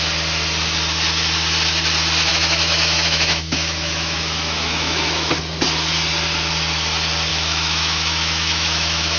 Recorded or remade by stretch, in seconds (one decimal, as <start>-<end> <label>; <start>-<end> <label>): 0.0-2.3 recorded; 2.3-5.3 remade; 5.3-7.3 recorded; 7.3-9.2 remade